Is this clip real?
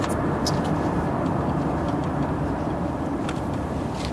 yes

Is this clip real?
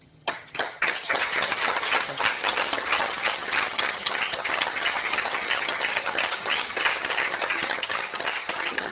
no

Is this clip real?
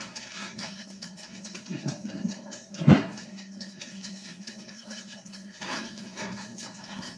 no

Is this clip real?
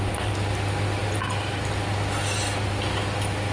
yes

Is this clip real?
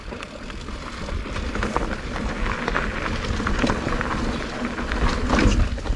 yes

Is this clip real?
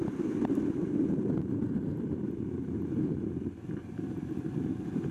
no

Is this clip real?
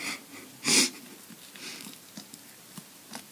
yes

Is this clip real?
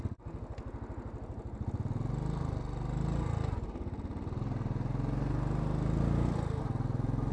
yes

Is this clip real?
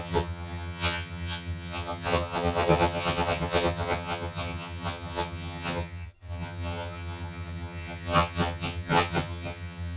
no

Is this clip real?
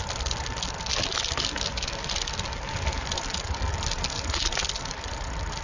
yes